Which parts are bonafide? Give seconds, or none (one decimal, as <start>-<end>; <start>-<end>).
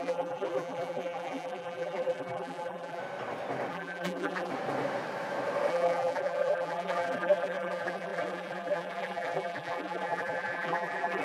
3.0-3.7; 4.5-5.7